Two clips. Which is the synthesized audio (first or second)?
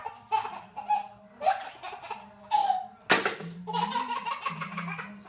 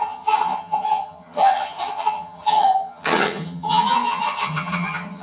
second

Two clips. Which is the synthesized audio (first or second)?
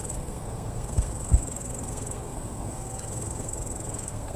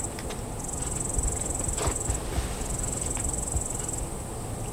first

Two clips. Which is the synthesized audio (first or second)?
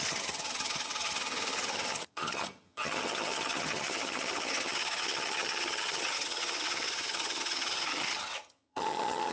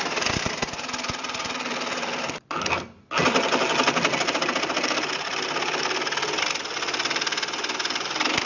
first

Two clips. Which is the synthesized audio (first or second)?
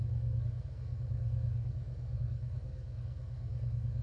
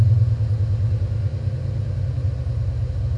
first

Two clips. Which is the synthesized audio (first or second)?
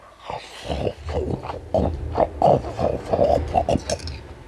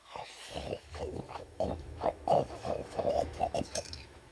second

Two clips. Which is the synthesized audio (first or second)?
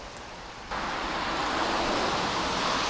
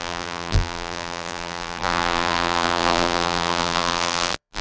second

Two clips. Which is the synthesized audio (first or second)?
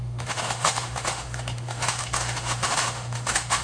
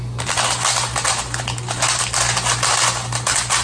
first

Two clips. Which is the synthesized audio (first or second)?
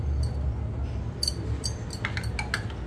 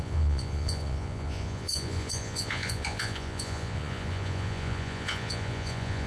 second